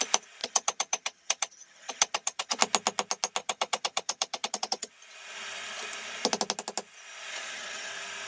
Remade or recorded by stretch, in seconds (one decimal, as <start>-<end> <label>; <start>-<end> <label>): 0.0-0.4 recorded; 0.4-2.6 remade; 2.6-3.4 recorded; 3.4-4.9 remade; 4.9-7.3 recorded; 7.3-7.9 remade; 7.9-8.3 recorded

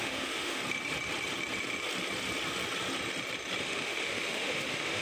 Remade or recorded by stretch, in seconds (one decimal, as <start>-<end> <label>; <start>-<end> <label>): 0.0-0.6 remade; 0.6-3.6 recorded; 3.6-5.0 remade

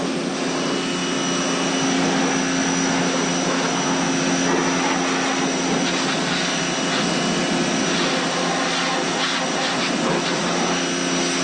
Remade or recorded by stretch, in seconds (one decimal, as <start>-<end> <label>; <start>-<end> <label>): 0.0-11.4 recorded

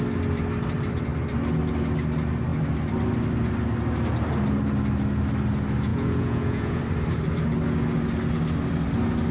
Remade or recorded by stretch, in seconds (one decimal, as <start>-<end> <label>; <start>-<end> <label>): 0.0-5.9 recorded; 5.9-6.8 remade; 6.8-9.3 recorded